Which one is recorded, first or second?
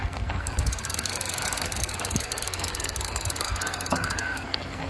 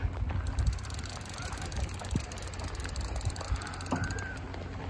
second